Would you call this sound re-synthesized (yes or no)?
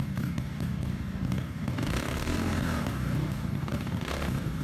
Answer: yes